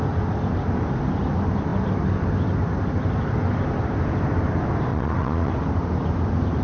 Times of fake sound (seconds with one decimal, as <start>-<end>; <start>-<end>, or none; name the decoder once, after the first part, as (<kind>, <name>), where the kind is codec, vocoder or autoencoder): 4.9-5.5 (vocoder, Vocos)

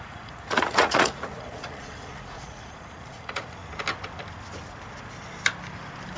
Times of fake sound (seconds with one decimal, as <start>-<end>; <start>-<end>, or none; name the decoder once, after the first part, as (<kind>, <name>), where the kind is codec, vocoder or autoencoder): 0.0-3.6 (vocoder, Vocos)

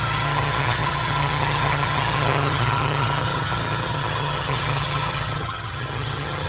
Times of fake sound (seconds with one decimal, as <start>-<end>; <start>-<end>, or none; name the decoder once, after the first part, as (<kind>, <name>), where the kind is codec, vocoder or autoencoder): 0.0-6.5 (vocoder, HiFi-GAN)

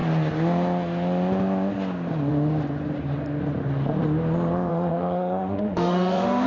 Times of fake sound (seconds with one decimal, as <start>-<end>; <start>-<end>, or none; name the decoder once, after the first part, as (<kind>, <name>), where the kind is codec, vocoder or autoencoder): 4.7-6.5 (autoencoder, DAC-VAE)